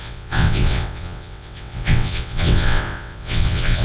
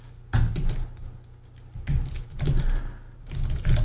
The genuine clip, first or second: second